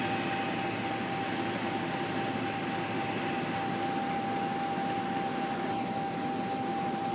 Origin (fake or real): real